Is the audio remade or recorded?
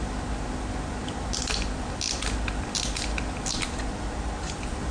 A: recorded